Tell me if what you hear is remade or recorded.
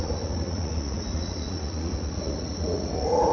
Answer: remade